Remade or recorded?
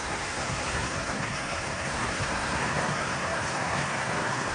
remade